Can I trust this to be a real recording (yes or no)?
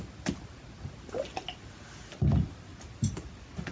yes